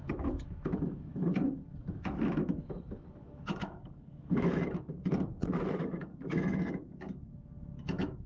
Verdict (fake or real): fake